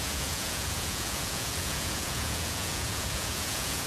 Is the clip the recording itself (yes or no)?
no